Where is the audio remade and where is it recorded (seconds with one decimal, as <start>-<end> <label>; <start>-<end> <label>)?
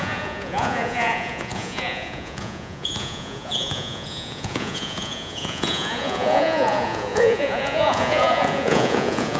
0.0-9.4 remade